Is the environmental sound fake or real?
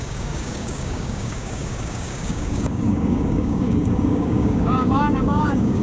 fake